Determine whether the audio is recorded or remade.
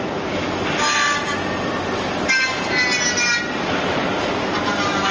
recorded